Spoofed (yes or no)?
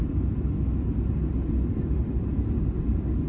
yes